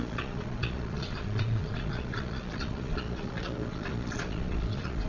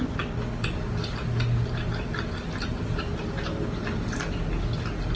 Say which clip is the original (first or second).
second